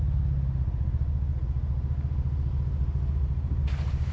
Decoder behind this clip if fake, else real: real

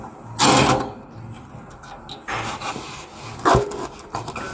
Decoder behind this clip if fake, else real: real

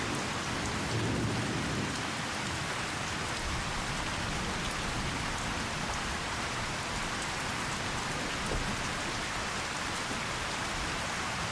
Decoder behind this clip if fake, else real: real